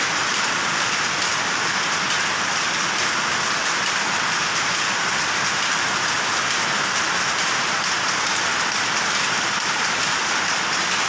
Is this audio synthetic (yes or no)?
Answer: no